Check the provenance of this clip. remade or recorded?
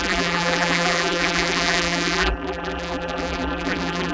remade